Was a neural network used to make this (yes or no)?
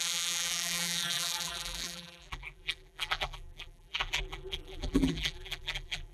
yes